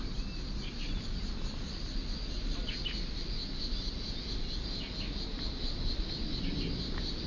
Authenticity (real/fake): real